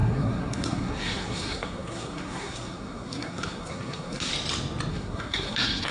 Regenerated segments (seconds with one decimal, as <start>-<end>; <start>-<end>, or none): 0.0-4.3; 4.9-5.9